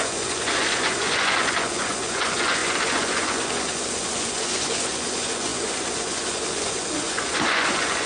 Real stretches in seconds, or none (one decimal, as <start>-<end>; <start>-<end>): none

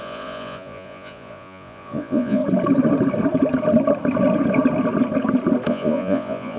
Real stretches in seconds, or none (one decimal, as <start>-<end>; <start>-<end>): 2.4-5.7

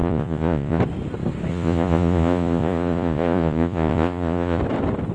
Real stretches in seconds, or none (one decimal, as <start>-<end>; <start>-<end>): 0.8-1.5; 4.6-5.1

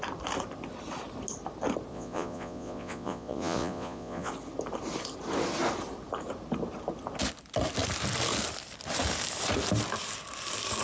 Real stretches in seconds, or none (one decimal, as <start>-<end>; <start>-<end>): 0.0-1.9; 4.3-10.8